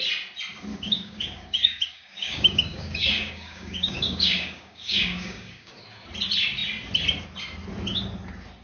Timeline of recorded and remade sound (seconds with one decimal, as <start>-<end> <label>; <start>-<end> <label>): 0.0-0.7 recorded; 0.7-5.7 remade; 5.7-8.6 recorded